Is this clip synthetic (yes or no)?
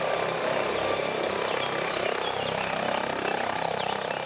no